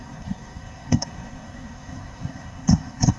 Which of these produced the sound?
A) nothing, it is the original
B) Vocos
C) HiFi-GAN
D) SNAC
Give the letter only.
D